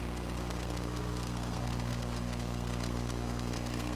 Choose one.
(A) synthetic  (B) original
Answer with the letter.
A